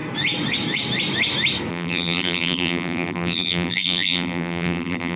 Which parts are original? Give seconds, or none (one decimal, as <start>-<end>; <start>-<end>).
0.0-1.7